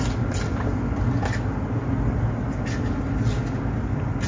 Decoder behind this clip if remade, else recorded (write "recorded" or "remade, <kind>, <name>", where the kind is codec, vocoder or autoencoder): recorded